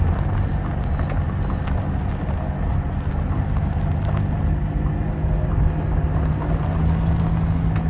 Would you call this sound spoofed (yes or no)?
no